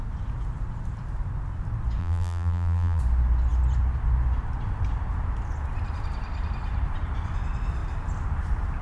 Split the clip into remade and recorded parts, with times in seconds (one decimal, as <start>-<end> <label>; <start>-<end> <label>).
0.0-2.0 recorded; 2.0-3.0 remade; 3.0-8.8 recorded